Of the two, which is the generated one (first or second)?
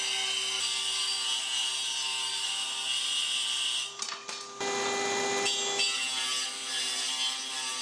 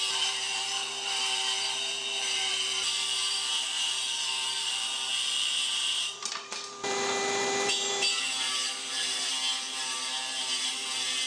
second